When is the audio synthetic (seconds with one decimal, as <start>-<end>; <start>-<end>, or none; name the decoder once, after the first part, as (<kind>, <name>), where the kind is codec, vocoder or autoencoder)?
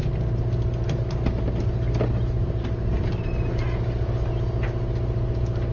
none